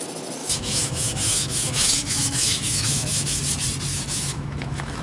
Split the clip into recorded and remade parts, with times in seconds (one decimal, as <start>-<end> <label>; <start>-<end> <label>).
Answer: 0.0-0.4 recorded; 0.4-3.4 remade; 3.4-3.9 recorded; 3.9-5.0 remade